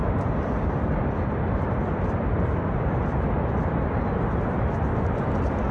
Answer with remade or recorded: remade